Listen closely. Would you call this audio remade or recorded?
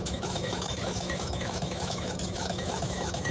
remade